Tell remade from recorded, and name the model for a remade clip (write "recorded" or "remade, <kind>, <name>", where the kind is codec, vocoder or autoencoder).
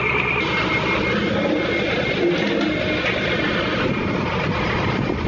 recorded